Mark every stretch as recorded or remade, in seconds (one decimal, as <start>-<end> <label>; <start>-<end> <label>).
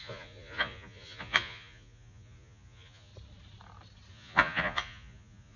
0.0-3.1 remade; 3.1-4.1 recorded; 4.1-5.6 remade